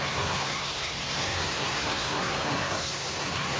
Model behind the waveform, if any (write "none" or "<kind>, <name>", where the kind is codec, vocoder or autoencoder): codec, SNAC